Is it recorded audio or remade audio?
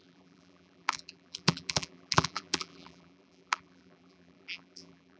remade